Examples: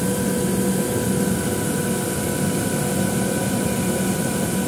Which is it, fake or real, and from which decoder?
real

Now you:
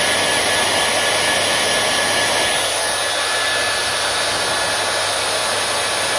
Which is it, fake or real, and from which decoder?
real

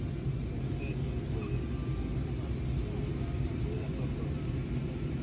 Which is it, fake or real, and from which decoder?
real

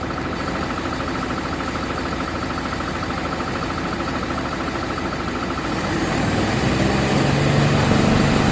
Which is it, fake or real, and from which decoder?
real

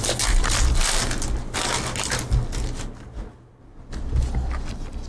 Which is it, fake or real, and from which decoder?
real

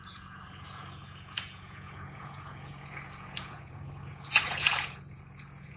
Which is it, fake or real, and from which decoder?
fake, vocoder, Vocos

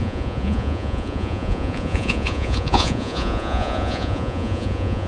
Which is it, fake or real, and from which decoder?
fake, vocoder, Vocos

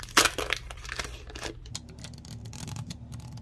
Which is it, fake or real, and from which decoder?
real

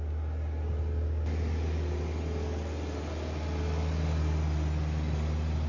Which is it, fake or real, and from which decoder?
real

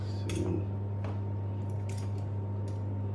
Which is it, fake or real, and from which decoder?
real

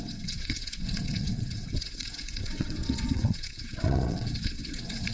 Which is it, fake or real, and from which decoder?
fake, vocoder, WaveNeXt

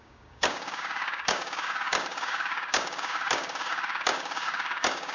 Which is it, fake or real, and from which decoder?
fake, codec, DAC